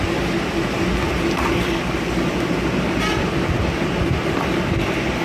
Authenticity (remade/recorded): recorded